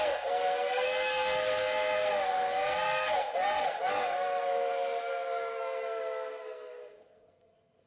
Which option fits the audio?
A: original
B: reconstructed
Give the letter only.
B